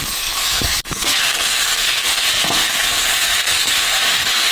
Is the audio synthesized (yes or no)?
yes